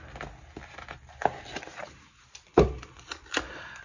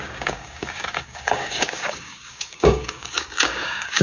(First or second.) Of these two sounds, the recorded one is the first